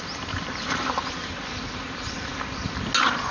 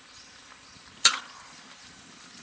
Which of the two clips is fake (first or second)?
second